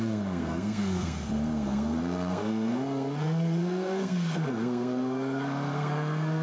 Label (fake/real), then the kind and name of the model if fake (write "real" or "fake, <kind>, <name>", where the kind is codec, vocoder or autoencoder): fake, codec, SNAC